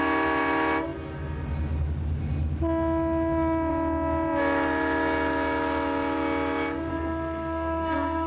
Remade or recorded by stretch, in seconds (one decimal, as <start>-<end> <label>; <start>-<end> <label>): 0.0-6.9 recorded; 6.9-8.3 remade